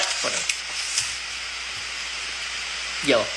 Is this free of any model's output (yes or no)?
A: yes